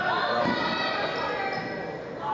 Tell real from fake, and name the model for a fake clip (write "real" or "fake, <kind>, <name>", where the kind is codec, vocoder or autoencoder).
real